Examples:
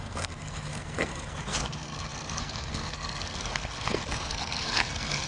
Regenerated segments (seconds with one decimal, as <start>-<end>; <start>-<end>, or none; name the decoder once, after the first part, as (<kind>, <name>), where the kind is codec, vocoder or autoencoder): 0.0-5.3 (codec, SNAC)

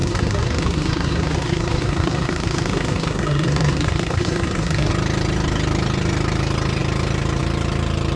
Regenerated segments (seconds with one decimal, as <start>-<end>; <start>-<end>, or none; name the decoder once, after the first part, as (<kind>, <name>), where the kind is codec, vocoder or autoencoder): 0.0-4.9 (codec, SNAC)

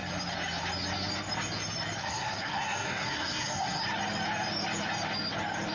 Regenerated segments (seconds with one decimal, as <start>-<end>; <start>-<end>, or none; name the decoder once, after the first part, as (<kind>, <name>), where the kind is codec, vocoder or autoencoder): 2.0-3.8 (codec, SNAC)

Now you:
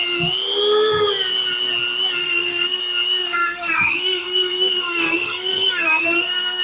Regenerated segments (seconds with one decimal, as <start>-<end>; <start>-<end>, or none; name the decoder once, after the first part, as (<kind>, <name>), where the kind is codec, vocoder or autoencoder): 2.2-2.8 (codec, SNAC); 3.2-6.6

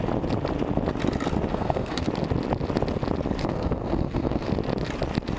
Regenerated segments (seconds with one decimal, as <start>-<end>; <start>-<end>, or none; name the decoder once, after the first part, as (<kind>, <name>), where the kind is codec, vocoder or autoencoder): 1.5-2.1 (codec, SNAC); 3.4-4.5

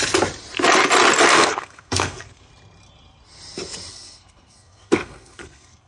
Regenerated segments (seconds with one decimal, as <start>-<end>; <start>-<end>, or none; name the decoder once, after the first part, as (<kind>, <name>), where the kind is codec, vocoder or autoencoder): 1.3-2.5 (codec, SNAC); 3.9-5.9